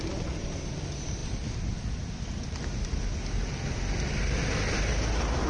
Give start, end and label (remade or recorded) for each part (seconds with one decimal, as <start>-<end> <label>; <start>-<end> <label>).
0.0-5.5 recorded